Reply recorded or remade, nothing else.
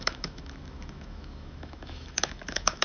remade